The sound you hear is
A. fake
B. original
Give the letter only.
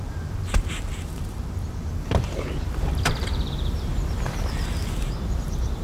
A